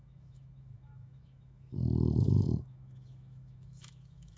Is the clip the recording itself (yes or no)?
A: no